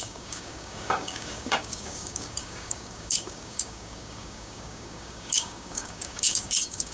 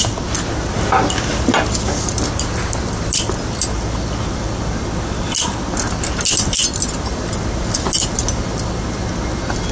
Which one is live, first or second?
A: second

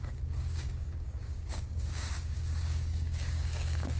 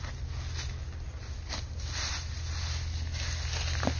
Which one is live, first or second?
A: second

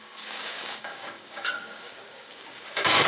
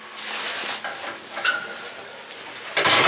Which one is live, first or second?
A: second